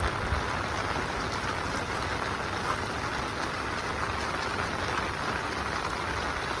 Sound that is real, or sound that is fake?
real